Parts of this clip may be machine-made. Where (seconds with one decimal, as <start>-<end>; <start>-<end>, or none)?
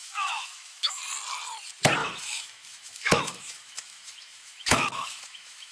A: 0.0-1.0; 2.0-5.7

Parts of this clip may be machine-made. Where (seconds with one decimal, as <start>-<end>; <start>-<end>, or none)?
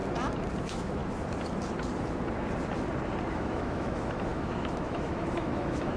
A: 0.6-1.0; 3.3-6.0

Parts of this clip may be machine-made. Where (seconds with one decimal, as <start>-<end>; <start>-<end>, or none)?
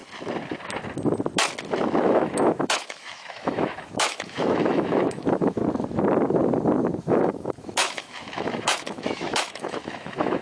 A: 2.0-5.6; 7.0-10.4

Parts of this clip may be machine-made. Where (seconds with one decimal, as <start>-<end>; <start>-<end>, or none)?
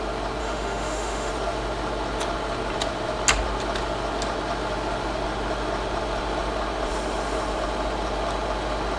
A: 0.4-1.3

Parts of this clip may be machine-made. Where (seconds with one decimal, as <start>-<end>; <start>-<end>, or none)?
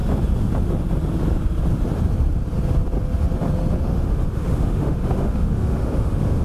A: 3.8-6.4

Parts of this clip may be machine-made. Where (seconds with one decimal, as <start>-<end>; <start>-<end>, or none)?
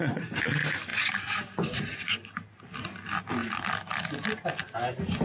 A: none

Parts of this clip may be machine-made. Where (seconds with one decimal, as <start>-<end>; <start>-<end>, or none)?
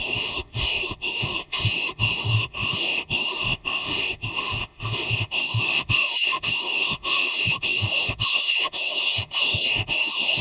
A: 0.0-10.4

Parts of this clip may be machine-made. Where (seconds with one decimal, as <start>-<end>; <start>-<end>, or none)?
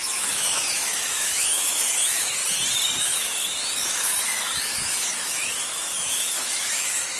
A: 0.0-2.4; 3.0-7.2